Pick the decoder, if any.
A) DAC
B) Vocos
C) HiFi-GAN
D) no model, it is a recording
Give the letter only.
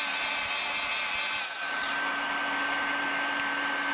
D